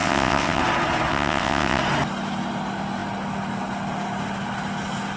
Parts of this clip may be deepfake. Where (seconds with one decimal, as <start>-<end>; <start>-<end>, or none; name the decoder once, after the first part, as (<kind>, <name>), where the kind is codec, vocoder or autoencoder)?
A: 0.0-0.6 (vocoder, WaveNeXt); 1.1-1.8